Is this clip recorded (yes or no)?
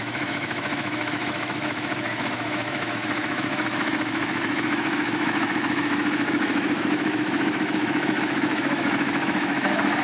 no